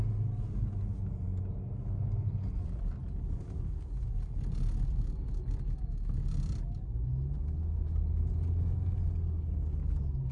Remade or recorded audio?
recorded